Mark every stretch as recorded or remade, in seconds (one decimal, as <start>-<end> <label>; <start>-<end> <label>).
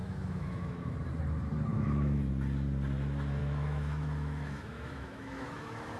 0.0-0.9 remade; 0.9-1.7 recorded; 1.7-2.3 remade; 2.3-3.4 recorded; 3.4-6.0 remade